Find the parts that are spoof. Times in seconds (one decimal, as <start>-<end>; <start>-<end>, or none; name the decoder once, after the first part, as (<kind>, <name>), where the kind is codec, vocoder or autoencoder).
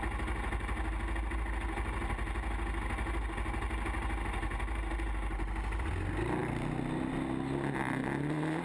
none